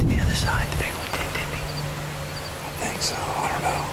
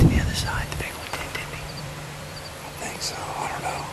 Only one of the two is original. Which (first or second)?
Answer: first